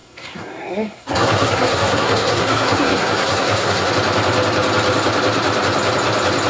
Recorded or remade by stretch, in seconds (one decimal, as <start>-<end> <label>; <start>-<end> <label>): 0.0-3.9 remade; 3.9-6.5 recorded